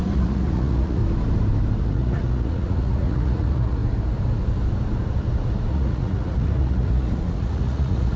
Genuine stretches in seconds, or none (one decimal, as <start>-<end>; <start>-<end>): 1.0-1.8; 3.8-5.7